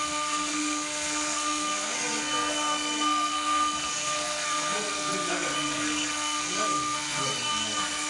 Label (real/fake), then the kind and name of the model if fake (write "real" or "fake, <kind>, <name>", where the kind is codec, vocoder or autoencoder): fake, codec, SNAC